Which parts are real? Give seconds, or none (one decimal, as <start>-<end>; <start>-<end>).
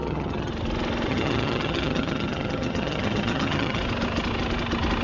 0.5-1.1; 3.8-5.0